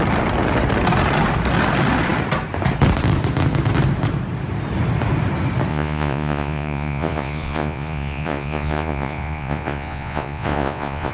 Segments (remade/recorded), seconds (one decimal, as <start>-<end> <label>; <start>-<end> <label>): 0.0-5.7 recorded; 5.7-11.1 remade